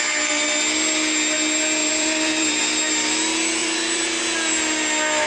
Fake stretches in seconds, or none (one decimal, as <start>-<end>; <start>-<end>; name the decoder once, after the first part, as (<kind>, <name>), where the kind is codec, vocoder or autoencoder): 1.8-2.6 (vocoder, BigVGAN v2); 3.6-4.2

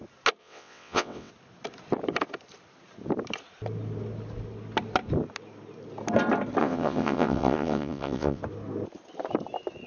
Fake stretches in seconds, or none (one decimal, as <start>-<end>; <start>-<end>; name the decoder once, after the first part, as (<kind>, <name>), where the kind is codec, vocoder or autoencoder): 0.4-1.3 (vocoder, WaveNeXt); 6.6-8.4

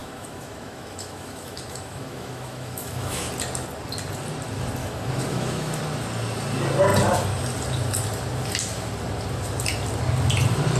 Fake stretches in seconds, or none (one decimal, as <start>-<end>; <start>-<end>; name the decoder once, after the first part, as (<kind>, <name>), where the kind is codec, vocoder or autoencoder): 0.0-3.3 (autoencoder, DAC-VAE); 4.8-5.8

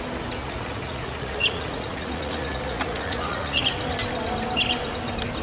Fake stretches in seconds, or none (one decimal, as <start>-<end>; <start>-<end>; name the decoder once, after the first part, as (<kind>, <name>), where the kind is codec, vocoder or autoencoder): 0.4-3.6 (vocoder, Vocos)

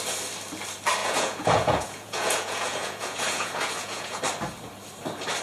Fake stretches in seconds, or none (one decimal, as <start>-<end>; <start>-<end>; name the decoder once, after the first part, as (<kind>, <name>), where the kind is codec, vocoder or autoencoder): 1.0-4.2 (vocoder, Vocos)